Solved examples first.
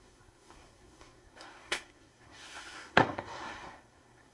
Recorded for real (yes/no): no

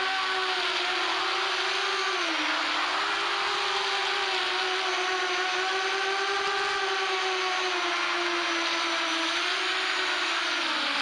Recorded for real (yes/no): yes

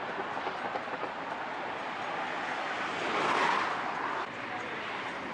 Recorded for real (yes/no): yes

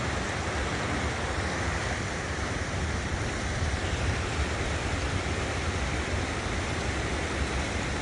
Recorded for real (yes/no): yes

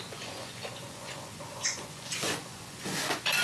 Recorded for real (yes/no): no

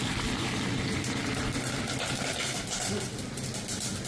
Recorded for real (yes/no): yes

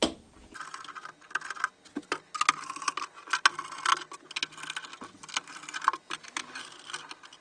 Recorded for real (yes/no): yes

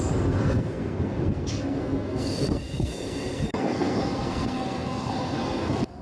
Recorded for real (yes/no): no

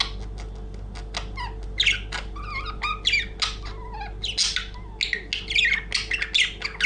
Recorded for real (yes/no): yes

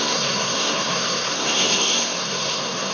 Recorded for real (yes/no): no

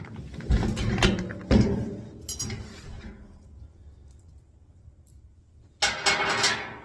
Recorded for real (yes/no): yes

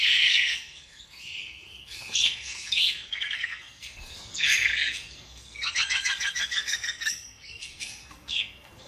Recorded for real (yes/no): no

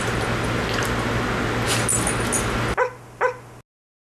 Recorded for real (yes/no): yes